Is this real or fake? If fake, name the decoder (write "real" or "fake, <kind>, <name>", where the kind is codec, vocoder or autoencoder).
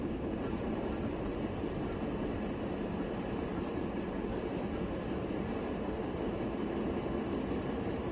real